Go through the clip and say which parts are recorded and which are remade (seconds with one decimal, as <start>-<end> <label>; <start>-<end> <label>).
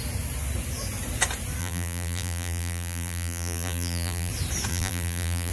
0.0-1.6 recorded; 1.6-4.3 remade; 4.3-4.7 recorded; 4.7-5.5 remade